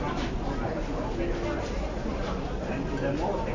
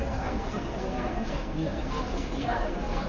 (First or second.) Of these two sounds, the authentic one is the first